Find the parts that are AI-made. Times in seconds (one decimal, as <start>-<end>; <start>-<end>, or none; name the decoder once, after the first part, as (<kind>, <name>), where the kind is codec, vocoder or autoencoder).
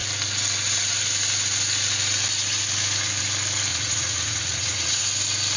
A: 3.7-5.0 (vocoder, Vocos)